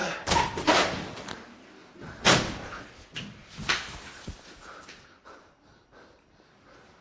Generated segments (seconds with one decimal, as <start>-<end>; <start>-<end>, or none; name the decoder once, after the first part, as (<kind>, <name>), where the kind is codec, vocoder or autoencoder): 0.0-1.0 (vocoder, BigVGAN v2); 1.8-2.8; 3.4-7.0